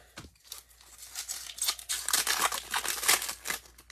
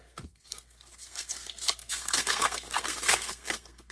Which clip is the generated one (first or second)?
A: second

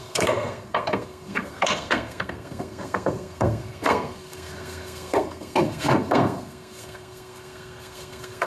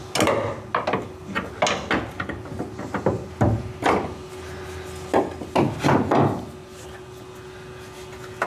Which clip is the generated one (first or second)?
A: first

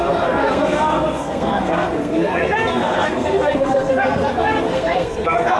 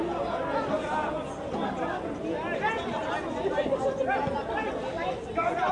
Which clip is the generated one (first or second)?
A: first